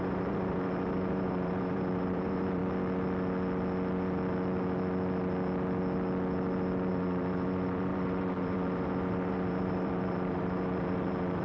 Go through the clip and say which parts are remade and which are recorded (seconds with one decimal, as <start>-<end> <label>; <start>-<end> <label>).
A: 0.0-2.6 remade; 2.6-6.9 recorded; 6.9-11.4 remade